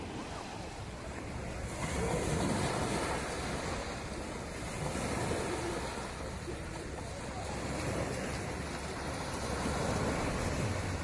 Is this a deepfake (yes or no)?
no